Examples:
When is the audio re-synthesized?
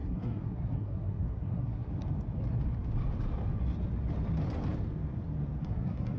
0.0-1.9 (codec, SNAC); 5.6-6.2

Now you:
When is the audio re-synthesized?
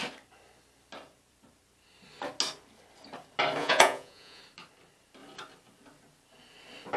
3.6-4.4 (vocoder, Vocos)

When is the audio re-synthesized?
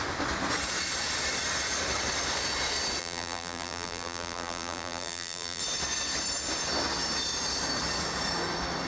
3.0-5.6 (vocoder, BigVGAN v2)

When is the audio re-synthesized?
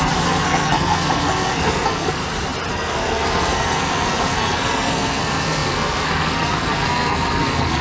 0.0-2.2 (codec, SNAC); 2.7-7.8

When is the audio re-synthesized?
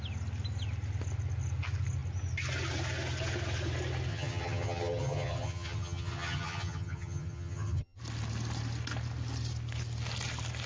4.1-8.0 (vocoder, HiFi-GAN)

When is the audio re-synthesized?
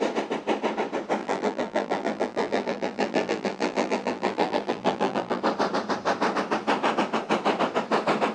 1.2-5.4 (vocoder, BigVGAN v2)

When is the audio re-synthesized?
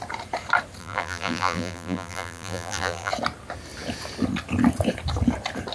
0.8-3.1 (vocoder, BigVGAN v2)